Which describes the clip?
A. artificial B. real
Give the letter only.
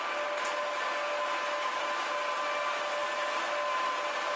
B